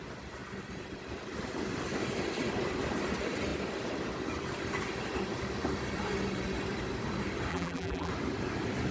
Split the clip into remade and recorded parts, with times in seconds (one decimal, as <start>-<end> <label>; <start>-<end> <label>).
0.0-7.5 recorded; 7.5-8.1 remade; 8.1-8.9 recorded